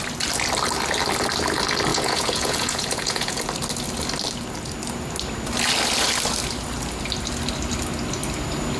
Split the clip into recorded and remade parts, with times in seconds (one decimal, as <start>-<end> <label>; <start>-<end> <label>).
0.0-1.9 recorded; 1.9-3.4 remade; 3.4-8.8 recorded